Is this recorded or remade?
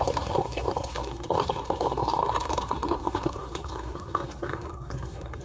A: remade